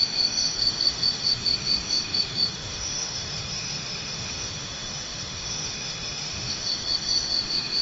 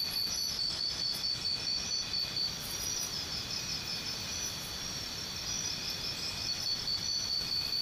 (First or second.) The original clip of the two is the second